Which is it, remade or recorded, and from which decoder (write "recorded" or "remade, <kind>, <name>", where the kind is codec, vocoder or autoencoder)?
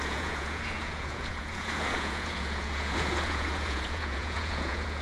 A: remade, vocoder, Vocos